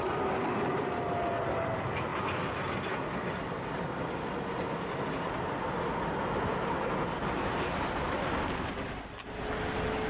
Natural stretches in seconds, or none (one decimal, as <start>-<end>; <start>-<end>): 0.0-10.1

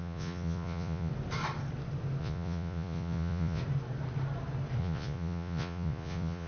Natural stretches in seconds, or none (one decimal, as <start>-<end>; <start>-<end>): 1.1-2.2; 3.6-4.8